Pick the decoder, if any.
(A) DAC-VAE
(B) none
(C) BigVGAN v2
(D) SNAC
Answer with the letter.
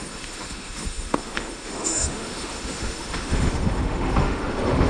A